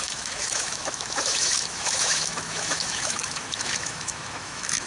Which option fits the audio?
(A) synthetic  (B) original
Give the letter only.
A